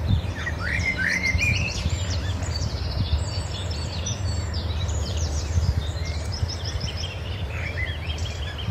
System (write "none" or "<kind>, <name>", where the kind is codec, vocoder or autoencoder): vocoder, BigVGAN v2